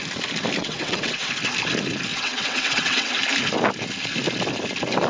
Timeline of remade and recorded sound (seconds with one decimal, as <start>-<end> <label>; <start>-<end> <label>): 0.0-0.6 recorded; 0.6-1.3 remade; 1.3-2.1 recorded; 2.1-3.1 remade; 3.1-5.1 recorded